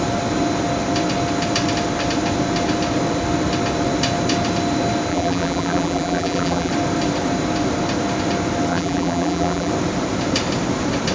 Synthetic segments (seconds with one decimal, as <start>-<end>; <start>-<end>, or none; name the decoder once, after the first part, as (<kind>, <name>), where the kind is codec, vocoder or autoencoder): 5.1-6.7 (vocoder, BigVGAN v2); 8.7-9.7